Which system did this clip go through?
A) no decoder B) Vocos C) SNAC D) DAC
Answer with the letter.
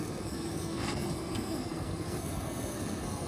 C